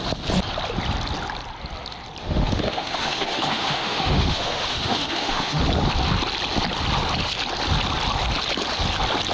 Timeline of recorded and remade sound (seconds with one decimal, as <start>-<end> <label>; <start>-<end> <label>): 0.0-2.2 recorded; 2.2-5.6 remade; 5.6-9.3 recorded